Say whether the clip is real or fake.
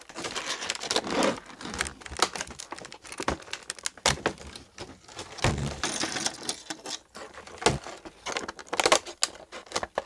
real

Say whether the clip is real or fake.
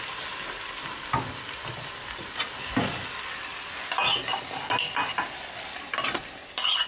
real